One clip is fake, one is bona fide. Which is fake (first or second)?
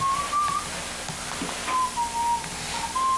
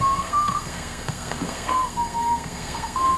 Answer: second